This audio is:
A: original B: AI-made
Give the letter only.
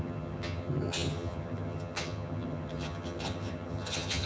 B